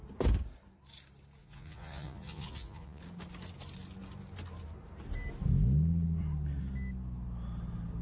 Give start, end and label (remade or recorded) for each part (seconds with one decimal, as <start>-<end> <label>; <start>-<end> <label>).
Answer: 0.0-1.4 recorded; 1.4-3.0 remade; 3.0-8.0 recorded